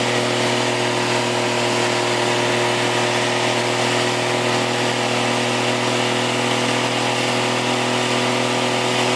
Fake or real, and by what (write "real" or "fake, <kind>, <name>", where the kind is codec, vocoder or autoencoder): real